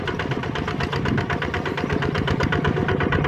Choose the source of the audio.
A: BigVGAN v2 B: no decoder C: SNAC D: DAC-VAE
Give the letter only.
A